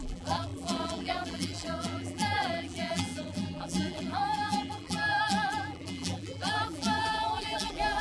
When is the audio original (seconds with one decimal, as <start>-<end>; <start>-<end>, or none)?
none